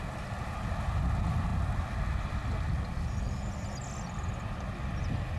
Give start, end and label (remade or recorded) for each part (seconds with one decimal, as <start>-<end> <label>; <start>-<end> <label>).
0.0-5.4 recorded